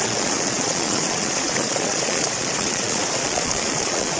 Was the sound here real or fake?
fake